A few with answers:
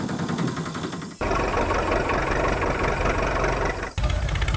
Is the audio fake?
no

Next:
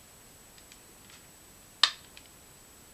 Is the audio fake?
no